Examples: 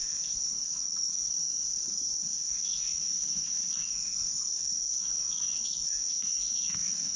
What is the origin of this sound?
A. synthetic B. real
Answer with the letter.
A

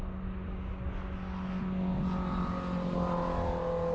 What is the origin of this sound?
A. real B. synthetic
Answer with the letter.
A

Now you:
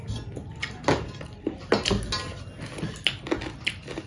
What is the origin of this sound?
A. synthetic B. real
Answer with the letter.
B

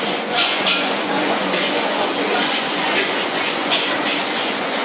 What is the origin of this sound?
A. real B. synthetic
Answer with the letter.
B